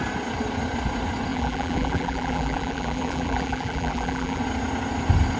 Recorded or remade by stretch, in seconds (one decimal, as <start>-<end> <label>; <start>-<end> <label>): 0.0-1.3 recorded; 1.3-4.4 remade; 4.4-5.4 recorded